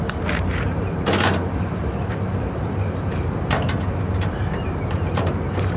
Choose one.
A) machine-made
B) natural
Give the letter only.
A